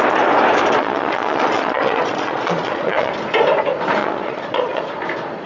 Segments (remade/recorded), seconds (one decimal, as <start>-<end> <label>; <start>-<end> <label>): 0.0-0.8 recorded; 0.8-3.1 remade; 3.1-4.0 recorded; 4.0-4.8 remade; 4.8-5.5 recorded